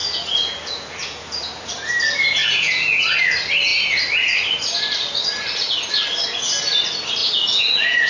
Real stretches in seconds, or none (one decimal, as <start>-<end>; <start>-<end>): 1.7-2.4; 3.1-7.2